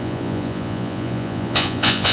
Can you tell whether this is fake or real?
fake